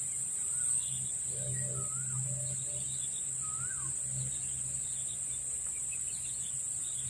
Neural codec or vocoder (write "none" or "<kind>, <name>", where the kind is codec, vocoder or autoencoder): none